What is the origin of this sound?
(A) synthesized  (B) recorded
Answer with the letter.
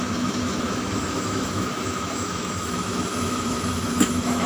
A